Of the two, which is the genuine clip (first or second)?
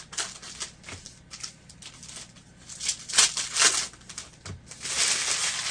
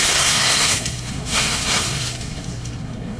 first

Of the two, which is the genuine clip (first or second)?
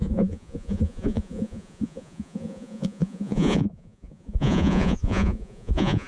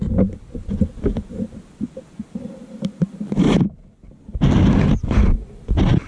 second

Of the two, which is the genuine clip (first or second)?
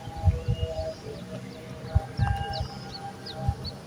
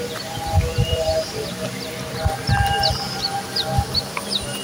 first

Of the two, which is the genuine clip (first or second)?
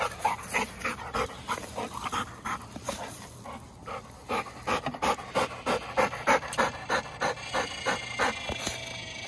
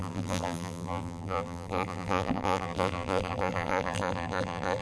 first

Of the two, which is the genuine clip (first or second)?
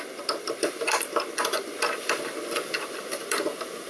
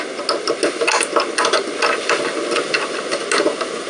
second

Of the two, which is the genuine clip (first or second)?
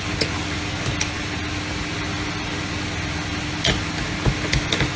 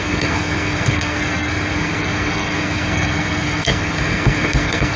first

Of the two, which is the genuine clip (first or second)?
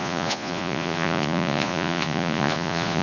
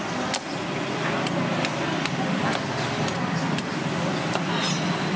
second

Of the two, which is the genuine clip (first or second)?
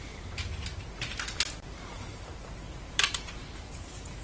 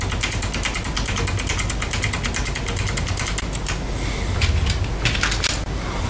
second